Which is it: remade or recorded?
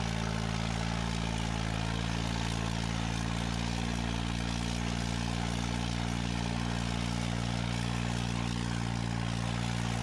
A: recorded